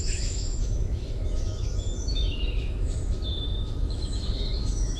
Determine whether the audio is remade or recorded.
remade